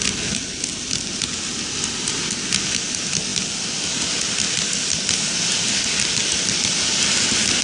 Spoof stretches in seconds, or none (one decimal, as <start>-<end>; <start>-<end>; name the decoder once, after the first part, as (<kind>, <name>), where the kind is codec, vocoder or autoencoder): none